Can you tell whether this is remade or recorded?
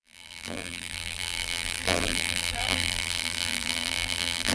remade